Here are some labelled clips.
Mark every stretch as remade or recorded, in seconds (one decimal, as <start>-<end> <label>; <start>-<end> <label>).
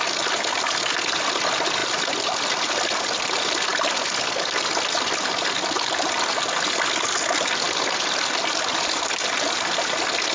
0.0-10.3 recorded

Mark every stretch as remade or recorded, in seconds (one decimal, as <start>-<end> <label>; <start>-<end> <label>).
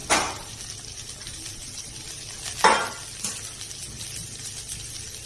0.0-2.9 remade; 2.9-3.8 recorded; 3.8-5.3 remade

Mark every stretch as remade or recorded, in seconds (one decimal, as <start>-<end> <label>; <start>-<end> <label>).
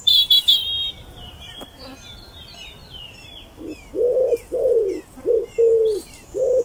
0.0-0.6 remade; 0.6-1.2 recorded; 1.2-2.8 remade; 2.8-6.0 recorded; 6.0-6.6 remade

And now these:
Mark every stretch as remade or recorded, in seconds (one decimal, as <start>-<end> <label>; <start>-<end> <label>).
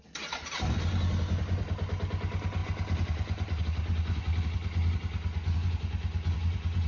0.0-6.9 recorded